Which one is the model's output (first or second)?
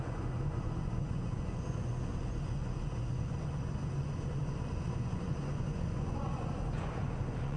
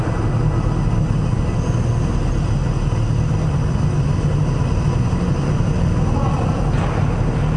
first